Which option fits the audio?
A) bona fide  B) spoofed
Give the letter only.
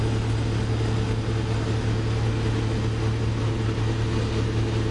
A